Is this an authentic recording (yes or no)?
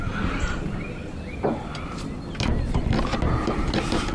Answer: yes